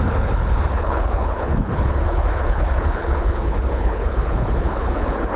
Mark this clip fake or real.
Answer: fake